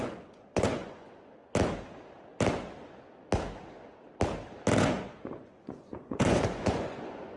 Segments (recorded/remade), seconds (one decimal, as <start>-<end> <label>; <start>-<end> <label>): 0.0-1.4 remade; 1.4-4.8 recorded; 4.8-7.4 remade